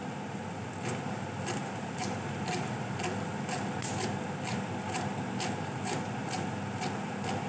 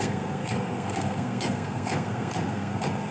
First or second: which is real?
first